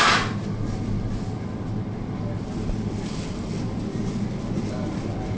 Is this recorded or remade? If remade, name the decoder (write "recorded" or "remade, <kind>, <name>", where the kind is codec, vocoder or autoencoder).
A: recorded